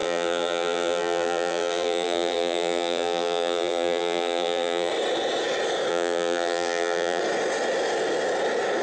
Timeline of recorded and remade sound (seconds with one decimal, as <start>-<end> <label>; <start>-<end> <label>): 0.0-4.9 remade; 4.9-5.9 recorded; 5.9-7.2 remade; 7.2-8.8 recorded